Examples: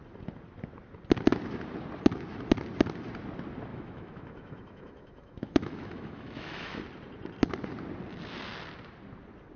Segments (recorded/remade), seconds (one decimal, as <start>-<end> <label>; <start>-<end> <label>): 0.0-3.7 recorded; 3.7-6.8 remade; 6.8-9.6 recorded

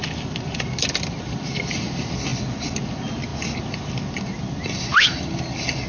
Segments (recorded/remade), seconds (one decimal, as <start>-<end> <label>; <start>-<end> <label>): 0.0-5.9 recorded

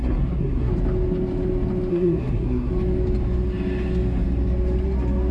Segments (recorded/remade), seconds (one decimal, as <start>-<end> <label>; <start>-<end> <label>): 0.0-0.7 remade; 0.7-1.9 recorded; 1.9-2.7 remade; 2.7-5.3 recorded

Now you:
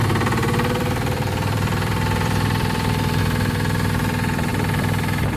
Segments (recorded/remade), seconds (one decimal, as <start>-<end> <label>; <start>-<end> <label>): 0.0-3.2 remade; 3.2-5.4 recorded

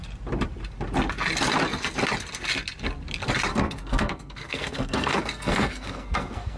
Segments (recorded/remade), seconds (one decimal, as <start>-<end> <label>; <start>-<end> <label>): 0.0-3.5 recorded; 3.5-6.6 remade

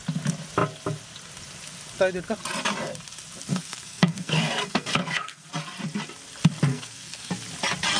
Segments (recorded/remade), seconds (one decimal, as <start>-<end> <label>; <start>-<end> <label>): 0.0-3.5 recorded; 3.5-5.5 remade; 5.5-6.7 recorded; 6.7-7.3 remade; 7.3-8.0 recorded